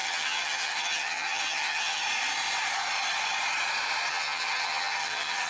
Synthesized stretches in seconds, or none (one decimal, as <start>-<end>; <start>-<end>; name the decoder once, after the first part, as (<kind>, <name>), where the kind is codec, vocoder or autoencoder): 0.0-2.0 (vocoder, HiFi-GAN); 4.1-5.5